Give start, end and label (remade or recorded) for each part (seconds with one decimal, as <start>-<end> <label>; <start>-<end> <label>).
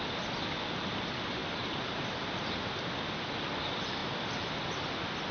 0.0-1.4 recorded; 1.4-2.7 remade; 2.7-5.3 recorded